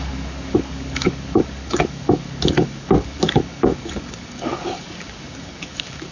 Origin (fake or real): fake